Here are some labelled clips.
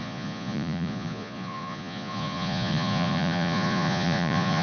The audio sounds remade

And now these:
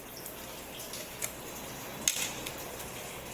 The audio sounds recorded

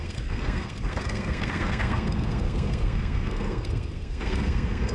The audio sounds remade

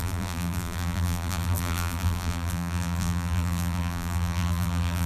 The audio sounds remade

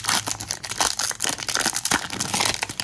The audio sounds recorded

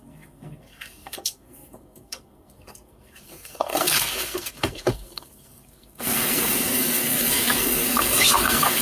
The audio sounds remade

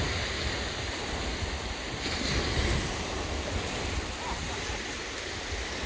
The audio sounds recorded